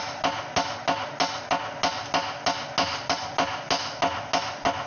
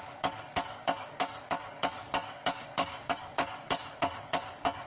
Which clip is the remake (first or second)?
second